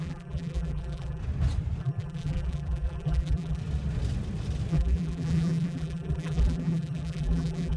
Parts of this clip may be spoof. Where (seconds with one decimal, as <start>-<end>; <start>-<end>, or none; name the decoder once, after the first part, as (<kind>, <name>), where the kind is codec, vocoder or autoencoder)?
0.0-1.2 (vocoder, BigVGAN v2); 1.8-3.6; 4.7-7.8